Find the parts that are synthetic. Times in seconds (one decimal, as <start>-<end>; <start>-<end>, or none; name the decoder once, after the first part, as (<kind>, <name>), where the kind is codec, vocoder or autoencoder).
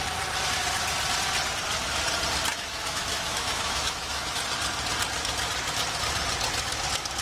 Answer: 2.5-4.4 (autoencoder, DAC-VAE)